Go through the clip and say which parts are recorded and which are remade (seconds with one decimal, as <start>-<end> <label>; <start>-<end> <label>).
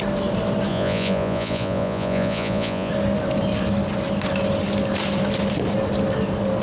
0.0-0.7 recorded; 0.7-2.9 remade; 2.9-6.6 recorded